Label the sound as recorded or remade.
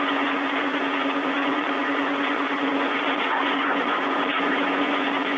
remade